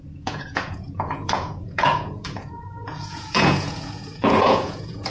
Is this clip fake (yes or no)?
yes